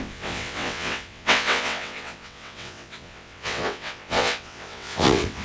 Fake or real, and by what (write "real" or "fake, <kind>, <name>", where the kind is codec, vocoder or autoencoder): fake, vocoder, WaveNeXt